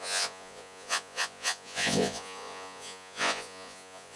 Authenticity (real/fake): fake